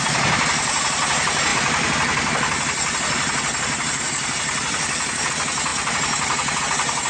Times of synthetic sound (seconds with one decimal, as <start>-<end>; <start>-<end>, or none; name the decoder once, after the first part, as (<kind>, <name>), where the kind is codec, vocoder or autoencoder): 1.5-5.3 (vocoder, BigVGAN v2); 5.7-6.6